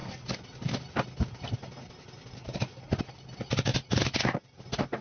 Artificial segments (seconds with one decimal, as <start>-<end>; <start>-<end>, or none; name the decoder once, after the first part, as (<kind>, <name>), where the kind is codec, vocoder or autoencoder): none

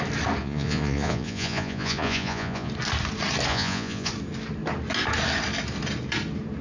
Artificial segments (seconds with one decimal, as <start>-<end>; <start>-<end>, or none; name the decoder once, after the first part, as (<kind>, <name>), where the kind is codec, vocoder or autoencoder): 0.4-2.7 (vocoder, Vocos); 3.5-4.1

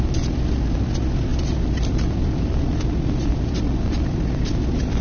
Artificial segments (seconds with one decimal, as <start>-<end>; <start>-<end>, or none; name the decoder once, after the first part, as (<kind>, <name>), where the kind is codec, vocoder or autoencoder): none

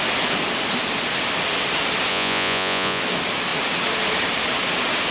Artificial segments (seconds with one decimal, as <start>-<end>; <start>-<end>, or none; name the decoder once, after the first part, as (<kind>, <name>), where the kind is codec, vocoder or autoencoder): 2.1-3.0 (vocoder, Vocos)